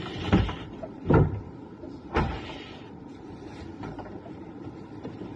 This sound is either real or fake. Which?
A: fake